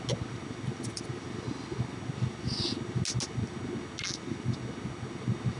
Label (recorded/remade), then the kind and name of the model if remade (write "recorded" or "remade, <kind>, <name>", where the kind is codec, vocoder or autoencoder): recorded